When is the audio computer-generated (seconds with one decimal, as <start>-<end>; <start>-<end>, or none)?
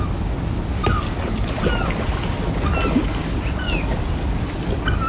none